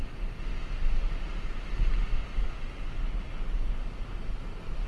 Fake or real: real